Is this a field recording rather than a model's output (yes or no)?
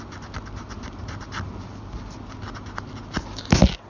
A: yes